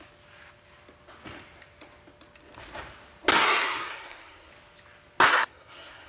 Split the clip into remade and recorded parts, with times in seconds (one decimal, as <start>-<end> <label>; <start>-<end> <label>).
0.0-3.3 recorded; 3.3-4.5 remade; 4.5-5.3 recorded; 5.3-6.1 remade